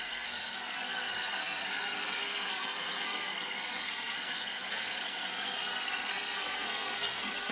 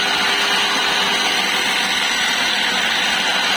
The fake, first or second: first